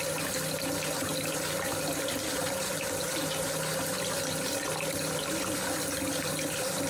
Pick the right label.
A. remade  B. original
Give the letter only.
B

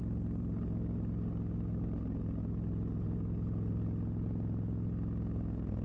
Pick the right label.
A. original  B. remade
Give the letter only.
A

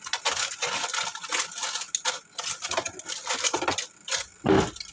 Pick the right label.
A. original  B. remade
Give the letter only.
A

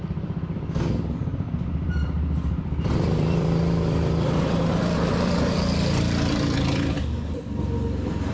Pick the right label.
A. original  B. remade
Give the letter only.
B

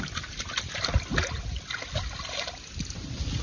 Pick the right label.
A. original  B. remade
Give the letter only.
A